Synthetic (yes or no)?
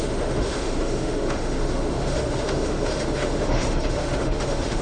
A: yes